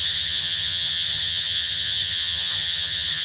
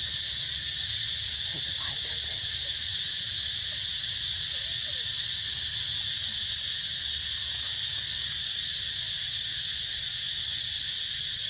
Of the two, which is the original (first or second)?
second